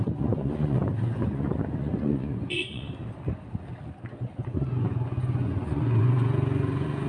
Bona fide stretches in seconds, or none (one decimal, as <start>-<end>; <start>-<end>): 3.0-4.1